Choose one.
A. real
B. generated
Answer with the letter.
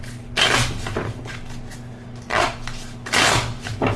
A